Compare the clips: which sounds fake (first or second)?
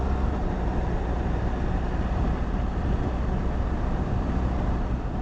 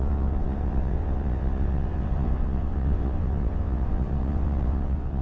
second